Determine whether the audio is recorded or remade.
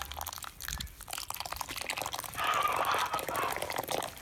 recorded